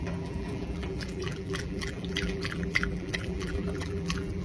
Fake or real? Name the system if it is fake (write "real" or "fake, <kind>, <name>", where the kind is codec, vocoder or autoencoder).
fake, vocoder, BigVGAN v2